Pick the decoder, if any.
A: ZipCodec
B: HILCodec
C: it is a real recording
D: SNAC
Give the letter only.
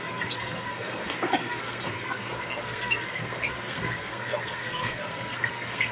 D